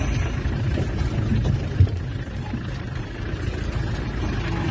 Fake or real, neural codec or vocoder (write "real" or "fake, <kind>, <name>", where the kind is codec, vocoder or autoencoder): real